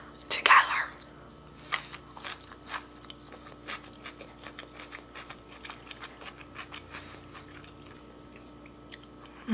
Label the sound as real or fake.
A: real